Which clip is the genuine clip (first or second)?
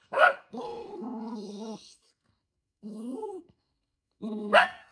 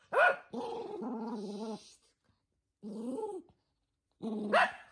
second